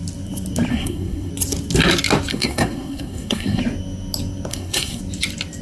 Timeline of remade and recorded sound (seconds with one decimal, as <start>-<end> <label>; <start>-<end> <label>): 0.0-0.7 recorded; 0.7-1.3 remade; 1.3-2.3 recorded; 2.3-3.6 remade; 3.6-4.5 recorded; 4.5-5.0 remade; 5.0-5.6 recorded